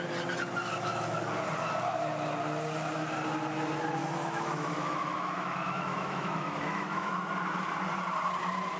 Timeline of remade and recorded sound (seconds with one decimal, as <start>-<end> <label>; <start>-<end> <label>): 0.0-4.0 recorded; 4.0-7.1 remade; 7.1-8.8 recorded